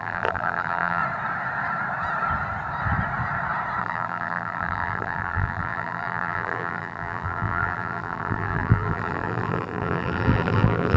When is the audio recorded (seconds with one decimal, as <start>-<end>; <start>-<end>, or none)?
1.0-3.8